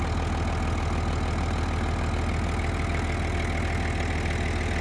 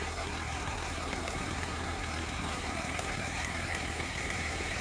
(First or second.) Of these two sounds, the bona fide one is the first